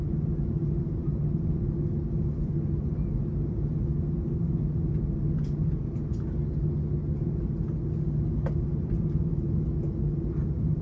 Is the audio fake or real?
real